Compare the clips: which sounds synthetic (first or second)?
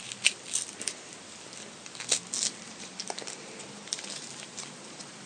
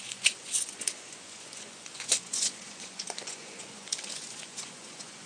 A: second